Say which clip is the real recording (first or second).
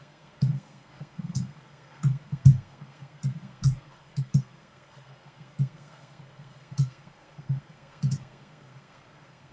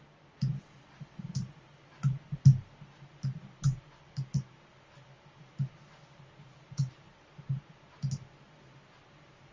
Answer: second